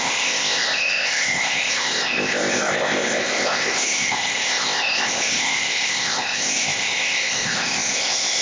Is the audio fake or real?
fake